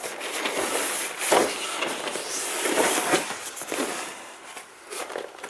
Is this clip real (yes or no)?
yes